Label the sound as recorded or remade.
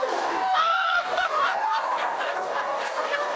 remade